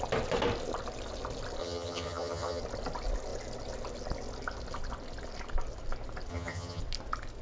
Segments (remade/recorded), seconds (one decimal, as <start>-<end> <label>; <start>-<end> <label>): 0.0-1.6 recorded; 1.6-2.6 remade; 2.6-6.3 recorded; 6.3-6.8 remade; 6.8-7.4 recorded